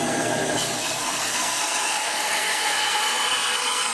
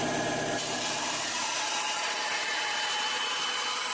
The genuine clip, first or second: second